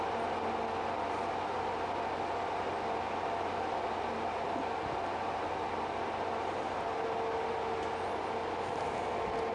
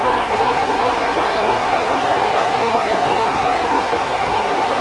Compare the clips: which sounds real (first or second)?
first